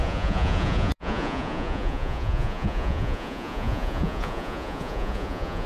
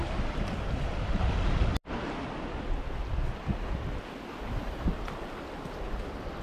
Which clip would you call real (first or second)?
second